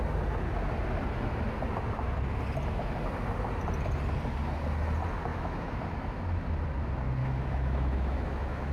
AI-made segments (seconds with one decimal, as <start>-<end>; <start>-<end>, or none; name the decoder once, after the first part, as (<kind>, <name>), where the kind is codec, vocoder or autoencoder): 5.3-5.8 (autoencoder, DAC-VAE); 7.2-8.7